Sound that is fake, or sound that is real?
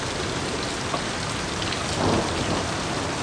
real